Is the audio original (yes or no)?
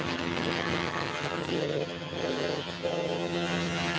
no